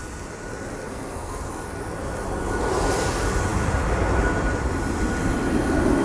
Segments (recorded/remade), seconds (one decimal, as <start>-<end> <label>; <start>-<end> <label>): 0.0-0.9 recorded; 0.9-1.5 remade; 1.5-6.0 recorded